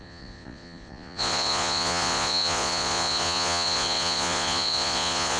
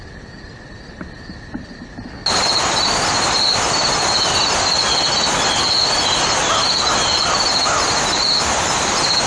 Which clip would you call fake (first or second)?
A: first